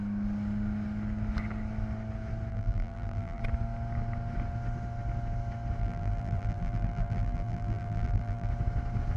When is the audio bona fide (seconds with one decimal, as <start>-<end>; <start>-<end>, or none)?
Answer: 0.0-2.5; 3.4-5.8; 8.5-9.2